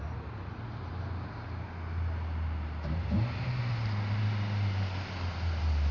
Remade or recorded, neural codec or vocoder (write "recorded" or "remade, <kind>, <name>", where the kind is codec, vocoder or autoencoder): recorded